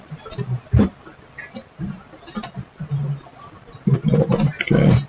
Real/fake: real